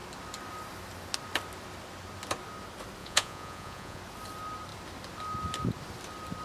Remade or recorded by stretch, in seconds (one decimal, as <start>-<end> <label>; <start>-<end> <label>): 0.0-3.0 recorded; 3.0-4.0 remade; 4.0-6.4 recorded